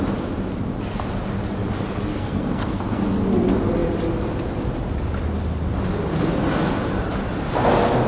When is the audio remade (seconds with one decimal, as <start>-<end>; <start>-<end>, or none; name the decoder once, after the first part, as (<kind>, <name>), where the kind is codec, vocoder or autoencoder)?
2.1-3.0 (codec, SNAC)